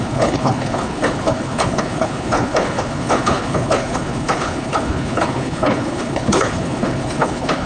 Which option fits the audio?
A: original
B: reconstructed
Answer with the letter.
B